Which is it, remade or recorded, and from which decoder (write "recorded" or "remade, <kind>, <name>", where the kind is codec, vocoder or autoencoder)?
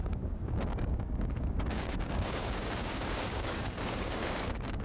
remade, codec, DAC